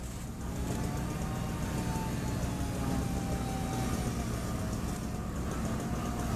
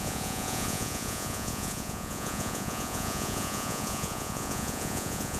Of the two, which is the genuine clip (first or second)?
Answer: first